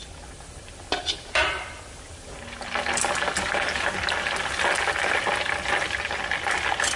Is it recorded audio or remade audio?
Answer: recorded